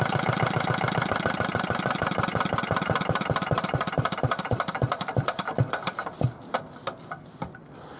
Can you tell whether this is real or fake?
fake